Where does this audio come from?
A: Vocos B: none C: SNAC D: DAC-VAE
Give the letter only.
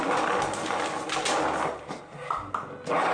B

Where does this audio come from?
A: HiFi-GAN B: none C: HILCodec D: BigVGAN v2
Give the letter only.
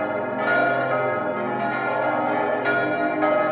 B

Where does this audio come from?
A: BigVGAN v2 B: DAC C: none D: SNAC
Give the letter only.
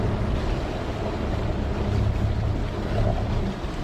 C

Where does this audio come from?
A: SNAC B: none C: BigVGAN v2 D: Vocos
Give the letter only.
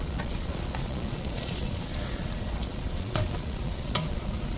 D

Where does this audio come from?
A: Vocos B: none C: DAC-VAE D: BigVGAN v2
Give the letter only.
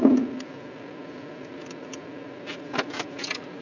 D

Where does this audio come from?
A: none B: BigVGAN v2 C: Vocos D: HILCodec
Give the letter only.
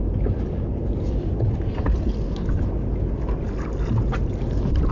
A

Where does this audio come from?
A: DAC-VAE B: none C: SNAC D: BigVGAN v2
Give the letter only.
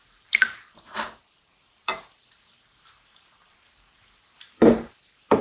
D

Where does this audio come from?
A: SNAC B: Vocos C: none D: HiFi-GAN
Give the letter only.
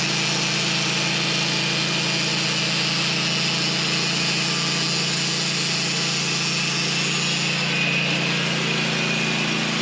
C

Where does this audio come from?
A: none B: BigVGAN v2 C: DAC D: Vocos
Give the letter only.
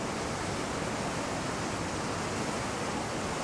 A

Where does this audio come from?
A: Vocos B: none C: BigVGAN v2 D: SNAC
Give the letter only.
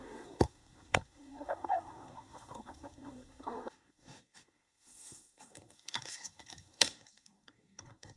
D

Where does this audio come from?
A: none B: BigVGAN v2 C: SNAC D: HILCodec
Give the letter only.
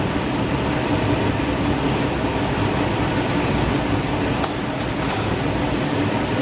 A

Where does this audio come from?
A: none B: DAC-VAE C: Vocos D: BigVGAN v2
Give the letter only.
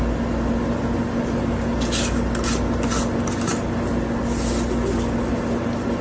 A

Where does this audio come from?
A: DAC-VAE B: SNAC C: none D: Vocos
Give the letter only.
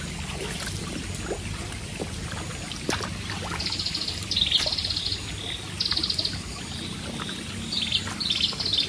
C